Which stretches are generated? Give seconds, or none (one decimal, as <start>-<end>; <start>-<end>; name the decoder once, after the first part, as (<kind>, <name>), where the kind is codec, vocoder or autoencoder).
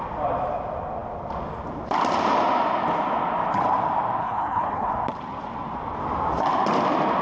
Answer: 4.2-4.9 (codec, HILCodec)